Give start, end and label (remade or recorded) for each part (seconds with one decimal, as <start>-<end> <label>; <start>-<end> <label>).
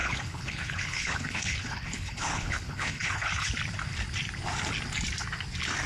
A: 0.0-3.5 remade; 3.5-5.9 recorded